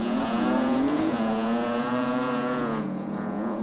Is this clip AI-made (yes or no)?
yes